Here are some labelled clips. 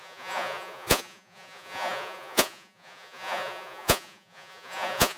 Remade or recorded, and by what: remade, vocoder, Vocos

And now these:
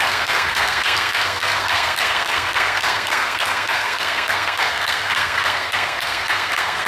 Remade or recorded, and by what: remade, codec, SNAC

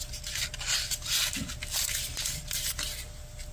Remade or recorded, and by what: recorded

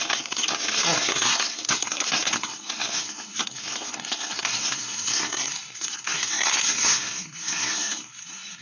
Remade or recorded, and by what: remade, codec, SNAC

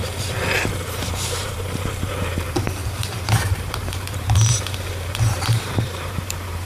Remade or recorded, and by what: remade, vocoder, BigVGAN v2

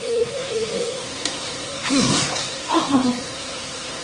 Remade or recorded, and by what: remade, codec, SNAC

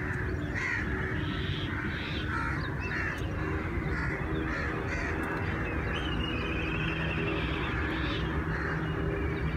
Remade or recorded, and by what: recorded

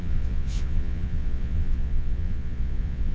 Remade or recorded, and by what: remade, vocoder, Vocos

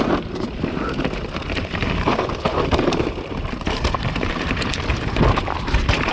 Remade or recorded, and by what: remade, vocoder, BigVGAN v2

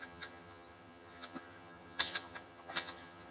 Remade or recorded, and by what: remade, vocoder, HiFi-GAN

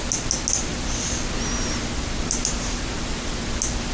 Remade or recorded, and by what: recorded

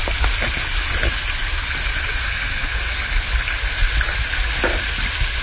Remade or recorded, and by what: recorded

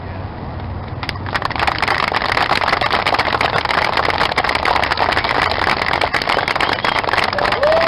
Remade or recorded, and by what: recorded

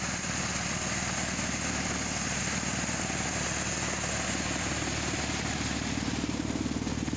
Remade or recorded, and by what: recorded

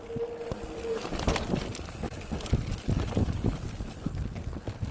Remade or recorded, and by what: recorded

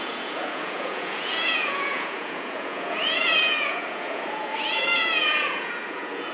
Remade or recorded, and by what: remade, vocoder, Vocos